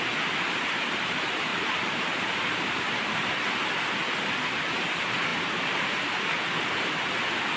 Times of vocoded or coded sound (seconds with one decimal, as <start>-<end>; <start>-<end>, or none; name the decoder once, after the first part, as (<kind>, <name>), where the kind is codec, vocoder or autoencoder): 1.5-3.5 (vocoder, BigVGAN v2); 5.3-7.1